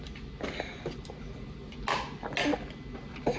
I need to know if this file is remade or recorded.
recorded